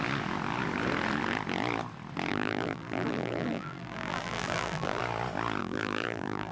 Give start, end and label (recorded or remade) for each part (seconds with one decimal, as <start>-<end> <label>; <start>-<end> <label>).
0.0-2.3 recorded; 2.3-5.0 remade; 5.0-5.6 recorded; 5.6-6.5 remade